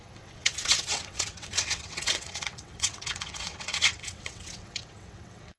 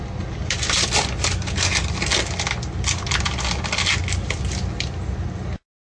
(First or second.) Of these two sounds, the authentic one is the second